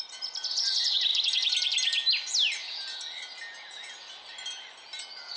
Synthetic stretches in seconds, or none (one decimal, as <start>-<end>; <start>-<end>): 0.0-1.1; 4.3-5.4